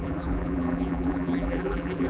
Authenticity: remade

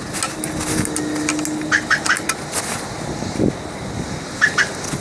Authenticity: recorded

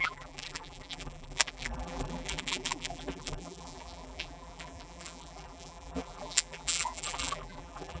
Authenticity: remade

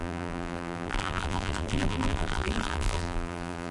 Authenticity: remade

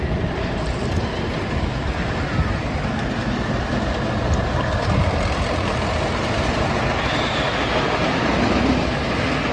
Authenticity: recorded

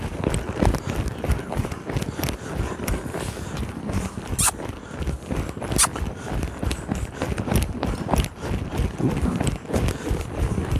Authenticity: recorded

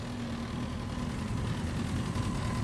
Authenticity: recorded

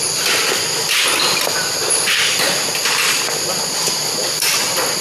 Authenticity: recorded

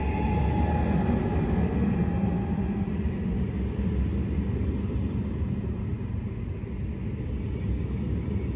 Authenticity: recorded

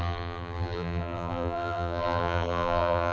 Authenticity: remade